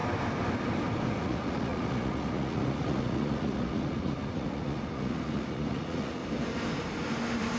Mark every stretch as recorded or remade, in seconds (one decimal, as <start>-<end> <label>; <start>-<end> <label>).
0.0-1.2 recorded; 1.2-6.2 remade; 6.2-7.6 recorded